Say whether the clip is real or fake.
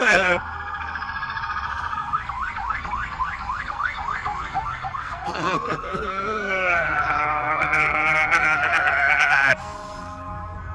fake